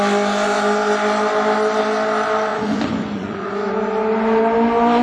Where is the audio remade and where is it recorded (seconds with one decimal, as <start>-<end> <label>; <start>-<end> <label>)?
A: 0.0-2.5 recorded; 2.5-3.5 remade; 3.5-5.0 recorded

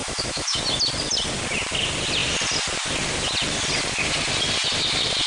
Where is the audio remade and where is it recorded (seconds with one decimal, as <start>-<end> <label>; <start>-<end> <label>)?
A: 0.0-0.6 remade; 0.6-5.3 recorded

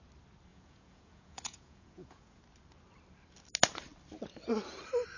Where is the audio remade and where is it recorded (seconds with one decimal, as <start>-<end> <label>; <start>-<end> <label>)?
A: 0.0-0.5 recorded; 0.5-2.4 remade; 2.4-5.2 recorded

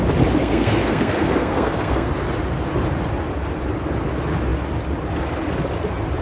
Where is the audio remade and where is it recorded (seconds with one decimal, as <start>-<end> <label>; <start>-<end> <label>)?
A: 0.0-0.4 recorded; 0.4-2.1 remade; 2.1-6.2 recorded